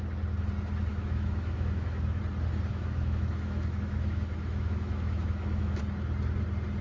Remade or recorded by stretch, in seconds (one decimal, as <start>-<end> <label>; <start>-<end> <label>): 0.0-0.9 recorded; 0.9-2.2 remade; 2.2-2.7 recorded; 2.7-5.8 remade; 5.8-6.8 recorded

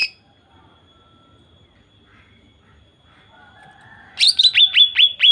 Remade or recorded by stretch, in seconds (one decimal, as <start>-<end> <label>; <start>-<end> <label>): 0.0-5.3 recorded

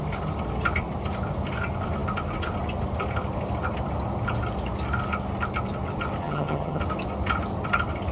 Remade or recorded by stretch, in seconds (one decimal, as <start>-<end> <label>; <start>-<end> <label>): 0.0-6.2 recorded; 6.2-6.8 remade; 6.8-8.1 recorded

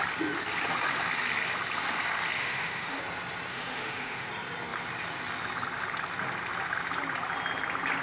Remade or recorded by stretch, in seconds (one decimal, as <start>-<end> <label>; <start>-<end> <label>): 0.0-2.4 recorded; 2.4-3.0 remade; 3.0-3.5 recorded; 3.5-4.3 remade; 4.3-8.0 recorded

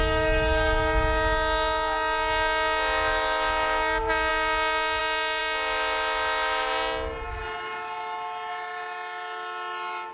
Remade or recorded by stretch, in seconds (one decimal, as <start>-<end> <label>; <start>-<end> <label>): 0.0-10.1 recorded

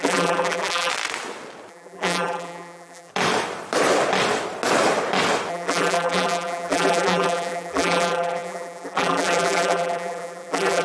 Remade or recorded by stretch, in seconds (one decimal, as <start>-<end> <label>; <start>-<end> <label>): 0.0-0.9 remade; 0.9-1.7 recorded; 1.7-3.1 remade; 3.1-5.5 recorded; 5.5-10.8 remade

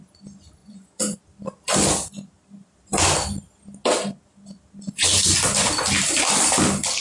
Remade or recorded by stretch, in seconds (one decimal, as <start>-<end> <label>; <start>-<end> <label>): 0.0-0.6 recorded; 0.6-1.2 remade; 1.2-7.0 recorded